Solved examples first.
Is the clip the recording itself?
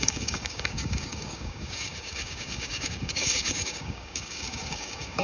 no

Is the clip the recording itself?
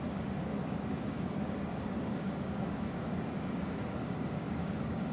no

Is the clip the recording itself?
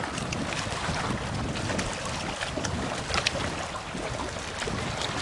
yes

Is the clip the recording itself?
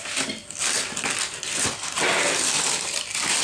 yes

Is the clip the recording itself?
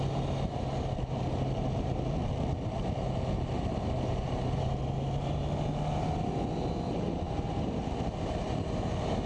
yes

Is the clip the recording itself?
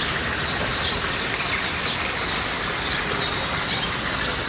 yes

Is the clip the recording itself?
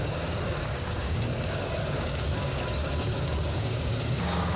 no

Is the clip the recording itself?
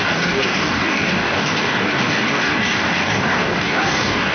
no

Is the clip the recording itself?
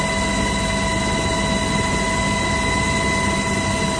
yes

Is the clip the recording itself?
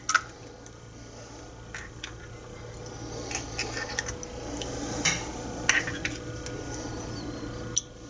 yes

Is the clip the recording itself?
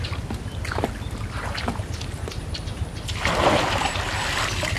yes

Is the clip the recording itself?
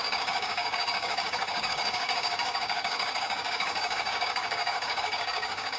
no